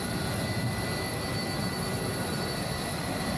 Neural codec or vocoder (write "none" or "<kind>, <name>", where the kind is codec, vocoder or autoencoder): vocoder, BigVGAN v2